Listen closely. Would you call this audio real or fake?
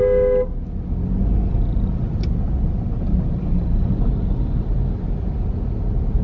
real